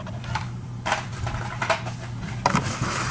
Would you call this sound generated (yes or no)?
yes